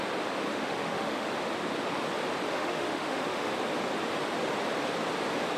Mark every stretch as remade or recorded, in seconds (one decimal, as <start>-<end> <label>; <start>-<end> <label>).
0.0-0.5 recorded; 0.5-1.3 remade; 1.3-2.5 recorded; 2.5-3.5 remade; 3.5-5.6 recorded